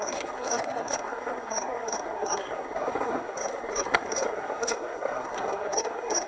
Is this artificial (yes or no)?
yes